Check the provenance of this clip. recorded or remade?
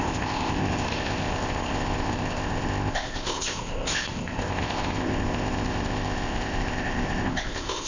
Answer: remade